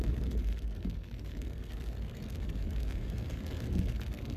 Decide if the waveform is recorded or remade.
remade